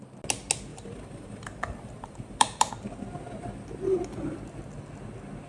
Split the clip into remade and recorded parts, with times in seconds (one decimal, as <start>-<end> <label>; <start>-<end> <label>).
0.0-0.7 recorded; 0.7-2.7 remade; 2.7-5.5 recorded